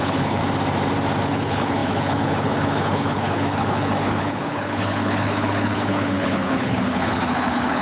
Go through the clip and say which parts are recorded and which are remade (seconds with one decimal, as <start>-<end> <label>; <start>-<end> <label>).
0.0-0.4 remade; 0.4-1.3 recorded; 1.3-7.8 remade